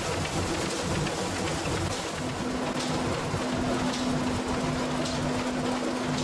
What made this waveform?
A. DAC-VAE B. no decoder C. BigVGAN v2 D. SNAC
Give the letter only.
B